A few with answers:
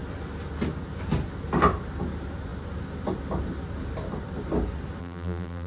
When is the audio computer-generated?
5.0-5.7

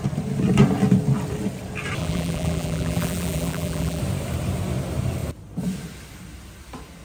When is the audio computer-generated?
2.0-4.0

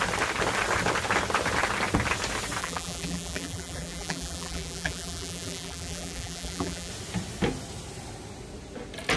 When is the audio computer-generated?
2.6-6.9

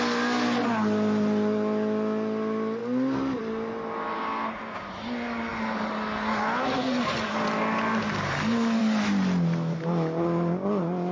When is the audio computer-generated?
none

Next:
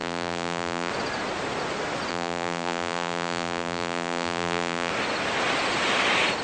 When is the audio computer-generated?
0.0-0.9; 2.1-4.9

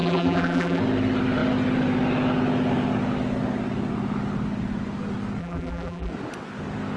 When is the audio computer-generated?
0.0-0.8; 5.4-6.1

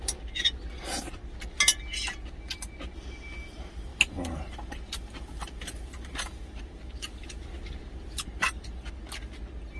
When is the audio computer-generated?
3.9-8.9